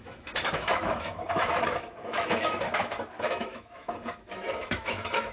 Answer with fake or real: fake